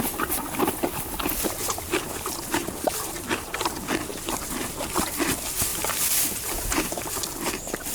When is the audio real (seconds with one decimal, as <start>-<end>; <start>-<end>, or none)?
0.0-2.6; 3.5-5.7; 7.0-7.9